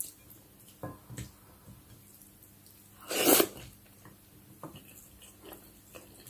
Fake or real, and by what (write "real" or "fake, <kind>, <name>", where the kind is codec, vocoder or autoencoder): real